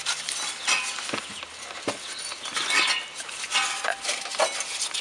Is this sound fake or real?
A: real